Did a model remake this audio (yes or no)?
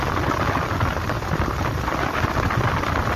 no